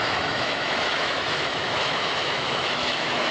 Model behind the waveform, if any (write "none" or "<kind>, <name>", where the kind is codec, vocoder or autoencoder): autoencoder, DAC-VAE